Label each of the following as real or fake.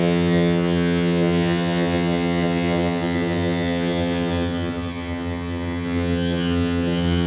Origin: fake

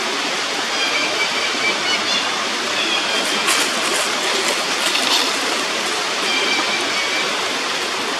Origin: real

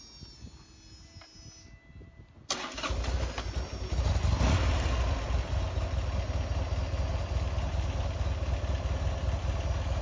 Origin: real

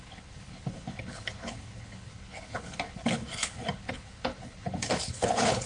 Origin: fake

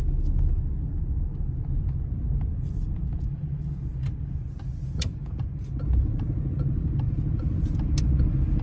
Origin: real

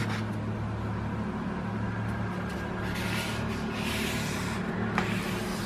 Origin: real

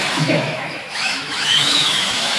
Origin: fake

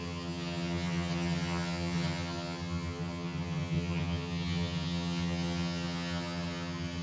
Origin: fake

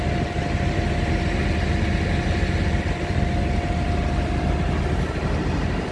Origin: real